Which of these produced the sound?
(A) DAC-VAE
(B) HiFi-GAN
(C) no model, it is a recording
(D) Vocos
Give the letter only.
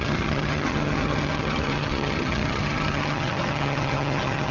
B